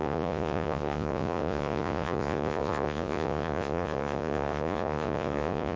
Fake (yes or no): yes